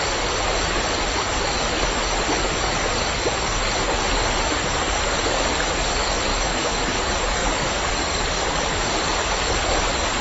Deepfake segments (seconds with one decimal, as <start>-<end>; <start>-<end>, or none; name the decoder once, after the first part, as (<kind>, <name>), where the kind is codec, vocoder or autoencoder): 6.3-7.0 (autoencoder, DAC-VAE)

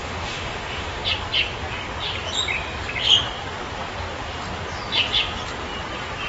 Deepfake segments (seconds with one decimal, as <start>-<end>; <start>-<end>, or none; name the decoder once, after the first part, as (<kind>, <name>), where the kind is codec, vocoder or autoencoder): 0.0-1.0 (autoencoder, DAC-VAE)

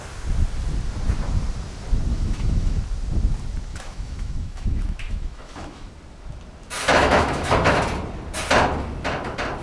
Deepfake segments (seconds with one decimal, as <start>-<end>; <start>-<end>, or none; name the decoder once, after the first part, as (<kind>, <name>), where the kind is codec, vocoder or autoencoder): 2.1-2.8 (autoencoder, DAC-VAE); 3.7-5.9; 6.9-7.8